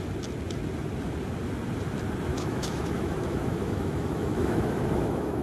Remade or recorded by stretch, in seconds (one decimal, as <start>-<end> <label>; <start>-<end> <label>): 0.0-2.3 recorded; 2.3-5.4 remade